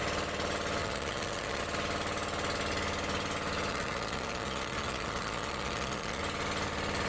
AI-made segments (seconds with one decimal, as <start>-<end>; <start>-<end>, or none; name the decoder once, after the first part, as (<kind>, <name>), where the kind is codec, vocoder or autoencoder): 0.8-1.6 (vocoder, Vocos); 3.7-6.2